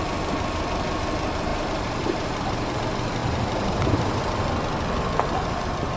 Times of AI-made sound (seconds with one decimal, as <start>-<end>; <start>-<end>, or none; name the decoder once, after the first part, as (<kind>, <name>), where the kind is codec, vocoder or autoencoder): 1.5-2.8 (vocoder, BigVGAN v2); 3.2-4.2